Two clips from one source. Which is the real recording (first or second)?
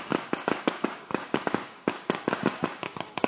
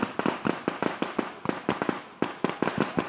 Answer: second